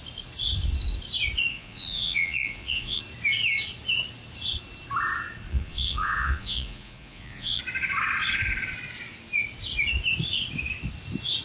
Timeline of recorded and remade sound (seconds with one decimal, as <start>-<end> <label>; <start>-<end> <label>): 0.0-1.5 recorded; 1.5-3.0 remade; 3.0-5.5 recorded; 5.5-7.6 remade; 7.6-11.4 recorded